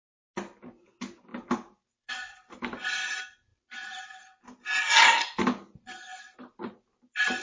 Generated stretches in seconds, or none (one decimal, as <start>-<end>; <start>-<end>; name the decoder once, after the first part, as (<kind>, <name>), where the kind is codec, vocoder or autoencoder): 1.3-2.1 (vocoder, BigVGAN v2)